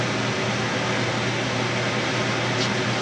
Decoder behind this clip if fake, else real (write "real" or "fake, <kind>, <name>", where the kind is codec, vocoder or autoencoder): real